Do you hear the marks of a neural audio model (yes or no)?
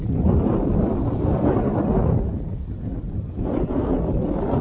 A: no